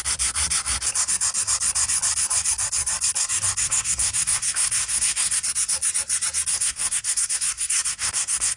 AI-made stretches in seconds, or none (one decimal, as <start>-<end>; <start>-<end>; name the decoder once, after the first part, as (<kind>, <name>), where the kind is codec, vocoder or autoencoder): 3.6-5.4 (codec, SNAC); 6.5-8.6